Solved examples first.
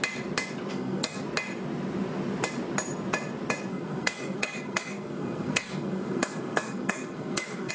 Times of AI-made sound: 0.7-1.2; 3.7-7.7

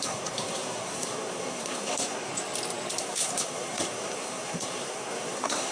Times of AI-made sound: 0.0-2.3; 3.0-5.7

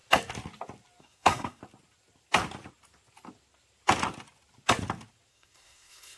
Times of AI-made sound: 1.0-1.6; 5.3-6.2

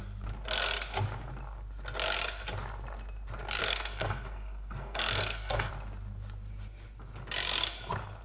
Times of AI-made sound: 3.6-5.7

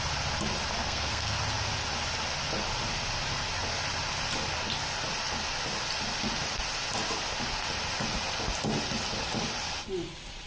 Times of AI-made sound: 0.8-1.4

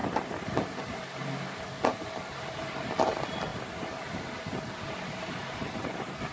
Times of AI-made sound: none

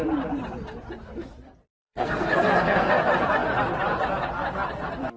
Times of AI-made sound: 1.7-3.0